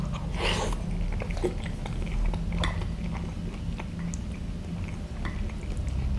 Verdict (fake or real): real